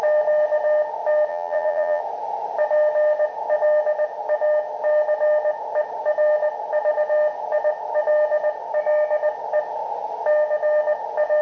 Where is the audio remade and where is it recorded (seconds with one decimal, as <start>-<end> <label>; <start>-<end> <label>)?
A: 0.0-1.3 recorded; 1.3-2.0 remade; 2.0-11.4 recorded